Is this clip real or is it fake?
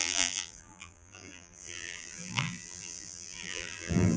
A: fake